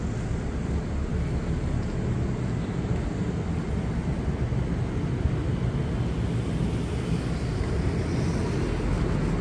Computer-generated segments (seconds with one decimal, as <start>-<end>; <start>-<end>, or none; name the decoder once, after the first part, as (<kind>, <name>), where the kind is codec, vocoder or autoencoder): none